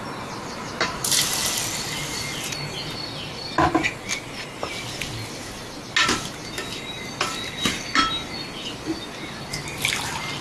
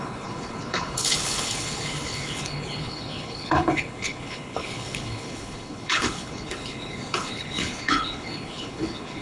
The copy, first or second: second